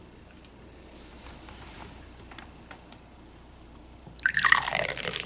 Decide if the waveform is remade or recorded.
remade